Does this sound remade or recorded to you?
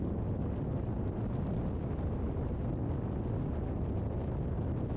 recorded